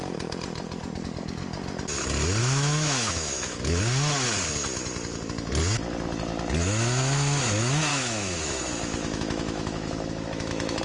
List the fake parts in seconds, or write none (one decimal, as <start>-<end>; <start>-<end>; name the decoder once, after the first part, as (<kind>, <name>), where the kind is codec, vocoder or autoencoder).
2.4-3.8 (autoencoder, DAC-VAE); 7.9-10.8

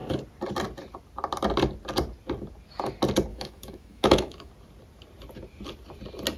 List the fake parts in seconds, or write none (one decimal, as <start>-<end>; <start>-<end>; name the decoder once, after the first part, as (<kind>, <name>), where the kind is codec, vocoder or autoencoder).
3.3-4.5 (autoencoder, DAC-VAE)

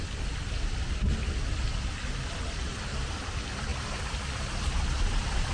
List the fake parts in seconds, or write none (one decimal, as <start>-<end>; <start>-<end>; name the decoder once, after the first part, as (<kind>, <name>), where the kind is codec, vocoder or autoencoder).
none

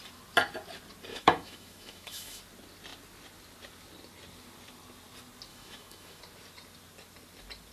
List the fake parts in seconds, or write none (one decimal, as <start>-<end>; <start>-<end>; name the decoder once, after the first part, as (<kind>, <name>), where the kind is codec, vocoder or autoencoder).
1.1-2.4 (autoencoder, DAC-VAE); 5.5-6.2